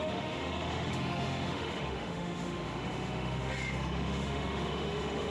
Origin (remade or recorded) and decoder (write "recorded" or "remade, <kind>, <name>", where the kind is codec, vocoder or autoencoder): remade, autoencoder, DAC-VAE